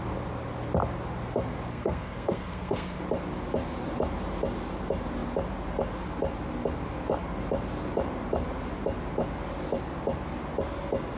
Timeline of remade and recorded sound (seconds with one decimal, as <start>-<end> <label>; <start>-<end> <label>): 0.0-1.7 recorded; 1.7-3.0 remade; 3.0-11.2 recorded